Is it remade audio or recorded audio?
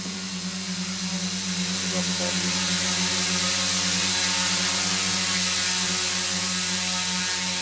recorded